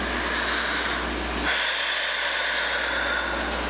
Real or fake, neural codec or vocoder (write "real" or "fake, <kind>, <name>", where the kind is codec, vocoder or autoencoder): real